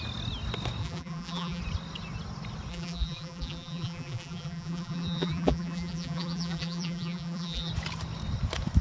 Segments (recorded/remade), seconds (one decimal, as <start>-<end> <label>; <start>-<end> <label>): 0.0-0.8 recorded; 0.8-1.6 remade; 1.6-2.7 recorded; 2.7-7.7 remade; 7.7-8.8 recorded